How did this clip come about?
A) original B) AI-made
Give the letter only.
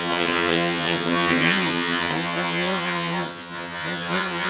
B